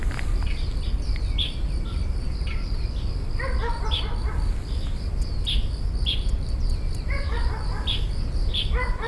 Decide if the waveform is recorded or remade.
remade